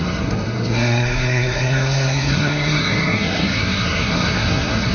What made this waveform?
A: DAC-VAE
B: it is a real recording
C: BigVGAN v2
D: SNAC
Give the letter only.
D